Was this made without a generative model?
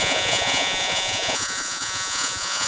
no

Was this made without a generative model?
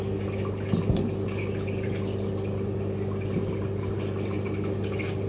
yes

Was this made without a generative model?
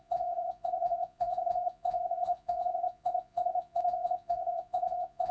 no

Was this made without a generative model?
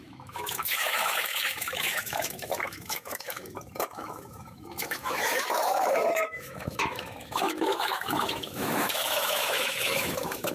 no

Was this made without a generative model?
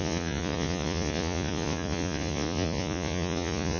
no